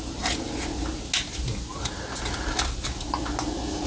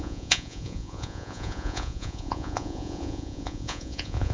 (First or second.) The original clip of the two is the first